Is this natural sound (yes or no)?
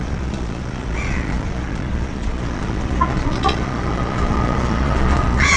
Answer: no